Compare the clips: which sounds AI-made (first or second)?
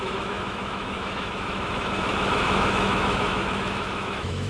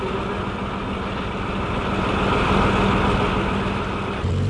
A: first